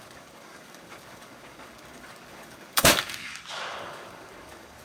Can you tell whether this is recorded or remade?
remade